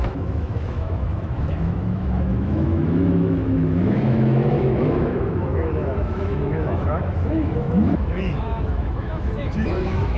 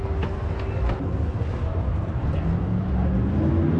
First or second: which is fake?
first